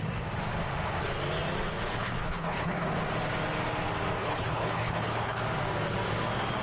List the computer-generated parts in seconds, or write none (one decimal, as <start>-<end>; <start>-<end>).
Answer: 1.9-3.0; 4.2-5.4